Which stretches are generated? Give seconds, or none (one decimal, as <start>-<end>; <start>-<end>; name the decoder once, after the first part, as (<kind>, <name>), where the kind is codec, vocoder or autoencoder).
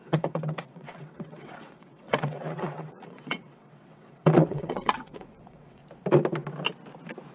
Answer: 0.0-5.8 (vocoder, WaveNeXt)